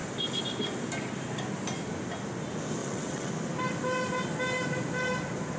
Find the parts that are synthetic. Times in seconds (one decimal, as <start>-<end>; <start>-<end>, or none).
2.8-3.3